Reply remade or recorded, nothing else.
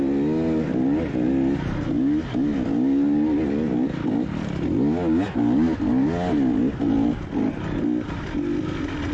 recorded